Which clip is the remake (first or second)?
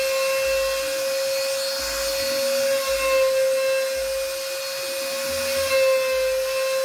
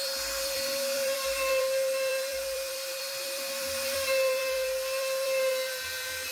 second